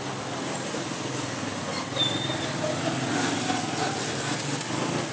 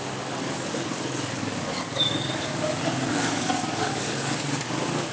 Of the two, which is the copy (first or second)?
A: second